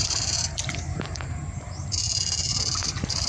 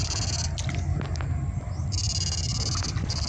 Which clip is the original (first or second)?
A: second